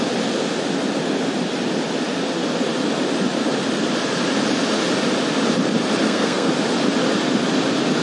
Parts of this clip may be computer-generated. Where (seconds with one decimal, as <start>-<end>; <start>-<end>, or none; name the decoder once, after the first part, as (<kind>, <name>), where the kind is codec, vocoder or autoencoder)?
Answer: 6.0-6.5 (codec, SNAC)